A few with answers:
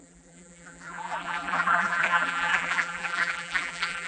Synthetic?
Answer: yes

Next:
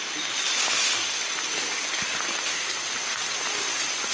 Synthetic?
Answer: no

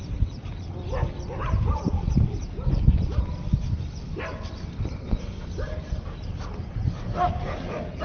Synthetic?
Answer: no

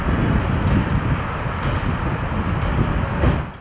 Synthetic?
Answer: no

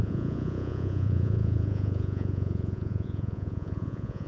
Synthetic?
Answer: yes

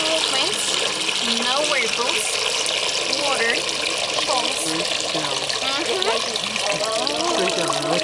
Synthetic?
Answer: no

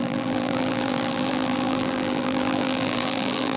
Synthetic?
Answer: yes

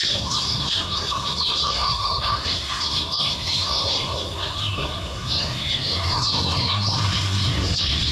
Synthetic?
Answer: yes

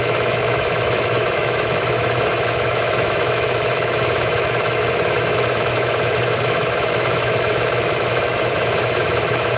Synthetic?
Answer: yes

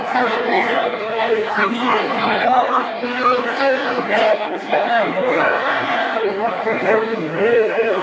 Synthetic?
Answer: yes